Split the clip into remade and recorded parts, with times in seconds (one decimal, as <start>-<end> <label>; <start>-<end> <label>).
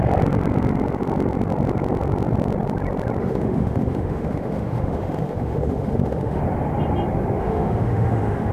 0.0-3.2 recorded; 3.2-6.4 remade; 6.4-7.4 recorded; 7.4-8.5 remade